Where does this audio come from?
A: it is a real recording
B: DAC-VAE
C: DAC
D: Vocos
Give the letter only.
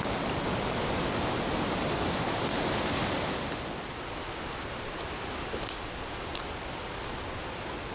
A